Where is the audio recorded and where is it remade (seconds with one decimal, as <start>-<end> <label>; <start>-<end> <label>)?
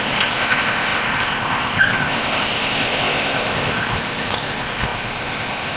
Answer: 0.0-5.8 remade